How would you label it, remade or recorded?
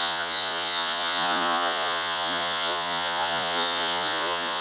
remade